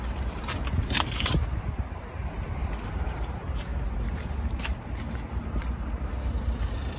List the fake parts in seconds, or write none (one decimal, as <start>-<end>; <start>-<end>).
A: 0.0-7.0